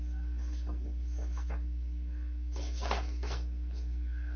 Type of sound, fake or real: fake